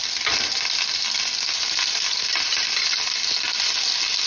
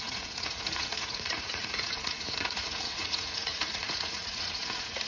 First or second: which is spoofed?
second